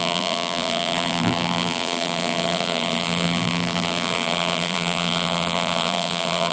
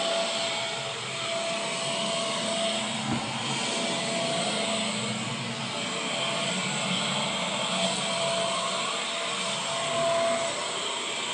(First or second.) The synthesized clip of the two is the first